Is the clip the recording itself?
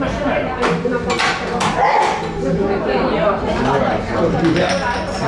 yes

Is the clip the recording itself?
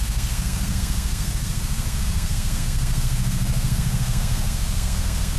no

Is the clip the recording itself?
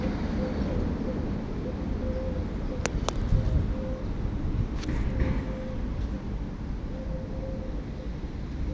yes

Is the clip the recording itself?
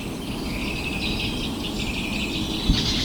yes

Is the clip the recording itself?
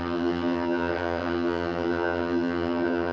no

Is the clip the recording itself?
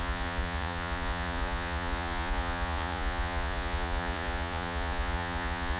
no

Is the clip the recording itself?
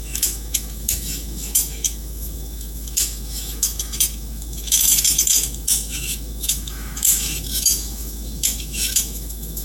no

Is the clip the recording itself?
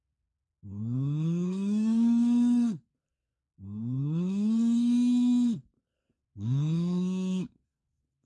no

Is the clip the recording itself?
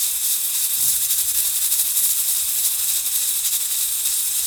no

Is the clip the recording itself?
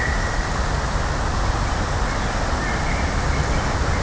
yes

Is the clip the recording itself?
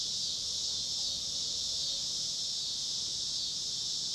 yes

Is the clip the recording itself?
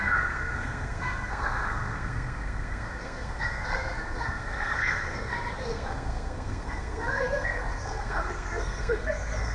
no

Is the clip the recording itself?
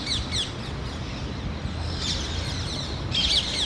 yes